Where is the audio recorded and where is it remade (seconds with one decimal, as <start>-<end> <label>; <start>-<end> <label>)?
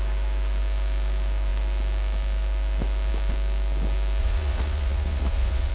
0.0-4.2 recorded; 4.2-5.7 remade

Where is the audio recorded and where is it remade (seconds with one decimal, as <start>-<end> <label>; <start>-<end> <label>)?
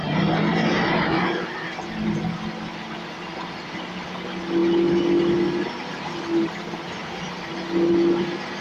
0.0-8.6 recorded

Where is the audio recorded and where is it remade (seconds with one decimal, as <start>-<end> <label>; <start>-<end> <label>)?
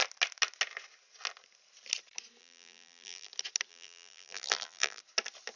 0.0-2.4 recorded; 2.4-3.3 remade; 3.3-3.7 recorded; 3.7-5.0 remade; 5.0-5.6 recorded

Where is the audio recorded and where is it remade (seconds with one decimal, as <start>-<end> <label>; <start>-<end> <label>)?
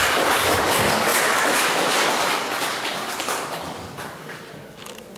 0.0-5.2 remade